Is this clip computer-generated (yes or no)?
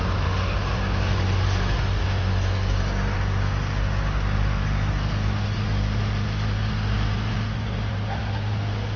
no